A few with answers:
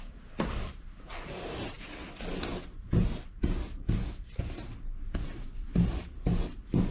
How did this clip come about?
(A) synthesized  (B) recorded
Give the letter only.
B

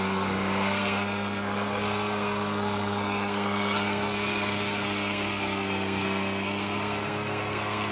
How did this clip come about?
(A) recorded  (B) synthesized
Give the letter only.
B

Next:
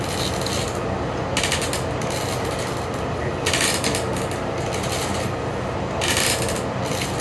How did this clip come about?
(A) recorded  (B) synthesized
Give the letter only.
A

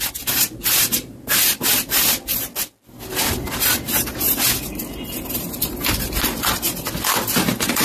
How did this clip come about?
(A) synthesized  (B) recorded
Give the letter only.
B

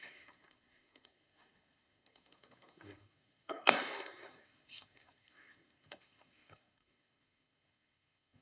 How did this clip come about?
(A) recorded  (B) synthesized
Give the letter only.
B